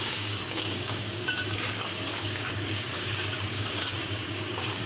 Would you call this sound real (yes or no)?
no